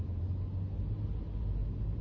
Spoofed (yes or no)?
no